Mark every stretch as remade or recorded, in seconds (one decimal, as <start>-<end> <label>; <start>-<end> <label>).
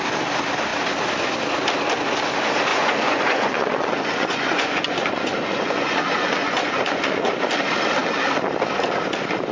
0.0-2.7 recorded; 2.7-7.3 remade; 7.3-9.5 recorded